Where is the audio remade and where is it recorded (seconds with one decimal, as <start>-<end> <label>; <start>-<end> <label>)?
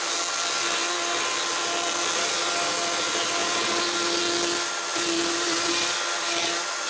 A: 0.0-3.4 recorded; 3.4-4.2 remade; 4.2-4.9 recorded; 4.9-6.9 remade